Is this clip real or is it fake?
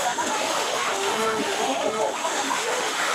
fake